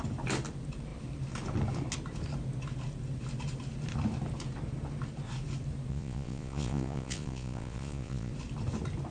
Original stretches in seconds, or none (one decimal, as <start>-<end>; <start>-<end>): 0.0-5.9; 8.3-9.1